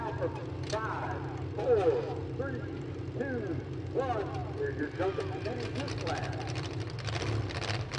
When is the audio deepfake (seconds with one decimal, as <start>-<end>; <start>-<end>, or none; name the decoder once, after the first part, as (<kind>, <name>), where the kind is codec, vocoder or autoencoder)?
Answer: 4.4-8.0 (vocoder, BigVGAN v2)